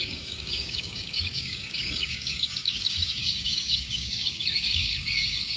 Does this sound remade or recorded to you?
remade